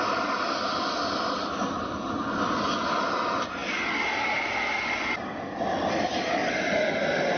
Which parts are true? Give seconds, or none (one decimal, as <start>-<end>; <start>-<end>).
0.0-7.4